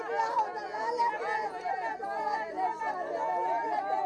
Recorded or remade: recorded